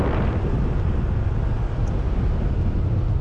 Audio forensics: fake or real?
real